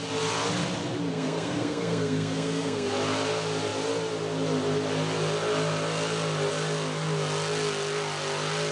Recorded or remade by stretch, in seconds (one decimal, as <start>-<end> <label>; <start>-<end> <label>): 0.0-1.1 recorded; 1.1-2.9 remade; 2.9-8.7 recorded